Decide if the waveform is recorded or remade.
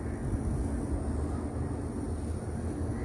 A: recorded